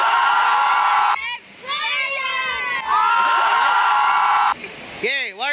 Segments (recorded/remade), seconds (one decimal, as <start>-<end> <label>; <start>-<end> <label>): 0.0-5.5 recorded